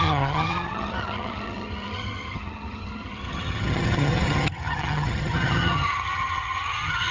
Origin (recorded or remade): remade